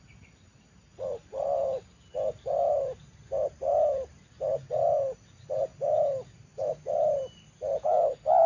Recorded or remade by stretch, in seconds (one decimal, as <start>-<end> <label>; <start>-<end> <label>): 0.0-8.5 recorded